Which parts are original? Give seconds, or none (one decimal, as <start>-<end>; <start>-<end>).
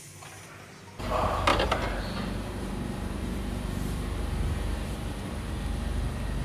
0.0-1.5; 5.3-6.4